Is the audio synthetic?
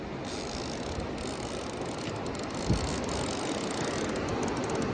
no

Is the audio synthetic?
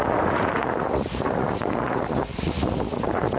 yes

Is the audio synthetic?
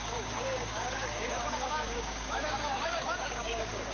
yes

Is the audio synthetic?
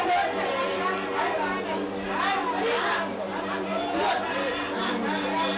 no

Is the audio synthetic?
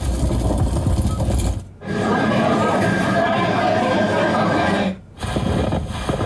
no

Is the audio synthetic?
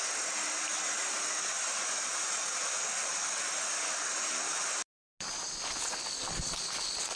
no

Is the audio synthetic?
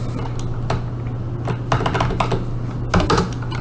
no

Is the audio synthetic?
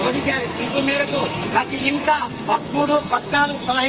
yes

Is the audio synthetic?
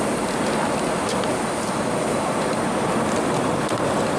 no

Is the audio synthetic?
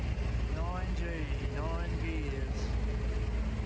no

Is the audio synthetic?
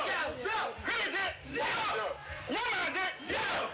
no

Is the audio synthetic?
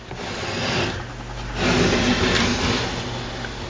no